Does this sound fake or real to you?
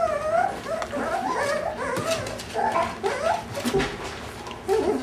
real